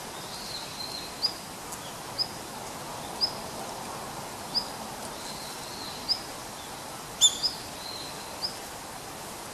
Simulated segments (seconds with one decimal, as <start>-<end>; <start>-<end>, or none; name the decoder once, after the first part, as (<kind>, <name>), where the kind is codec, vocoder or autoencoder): none